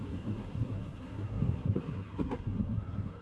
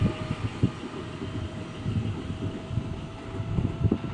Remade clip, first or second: first